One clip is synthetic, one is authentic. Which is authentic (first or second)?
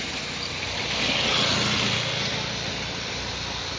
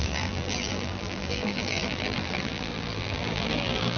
first